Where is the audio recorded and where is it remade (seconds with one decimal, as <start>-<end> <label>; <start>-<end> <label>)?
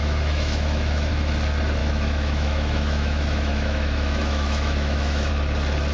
0.0-1.1 remade; 1.1-1.8 recorded; 1.8-5.3 remade; 5.3-5.9 recorded